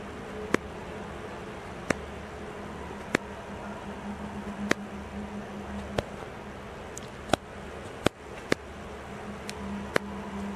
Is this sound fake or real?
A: real